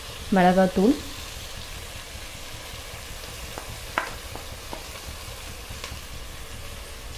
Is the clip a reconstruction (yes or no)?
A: no